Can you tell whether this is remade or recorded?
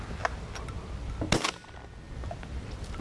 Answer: recorded